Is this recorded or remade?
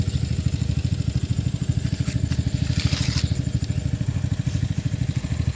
recorded